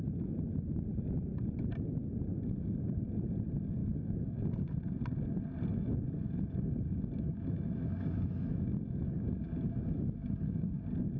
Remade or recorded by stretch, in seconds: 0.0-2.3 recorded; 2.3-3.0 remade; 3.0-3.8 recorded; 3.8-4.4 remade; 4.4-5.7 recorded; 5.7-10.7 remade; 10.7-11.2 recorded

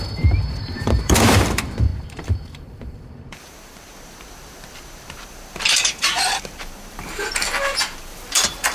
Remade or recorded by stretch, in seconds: 0.0-8.7 remade

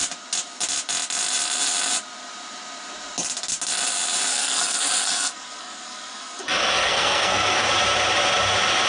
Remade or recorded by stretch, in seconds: 0.0-4.3 recorded; 4.3-7.7 remade; 7.7-8.9 recorded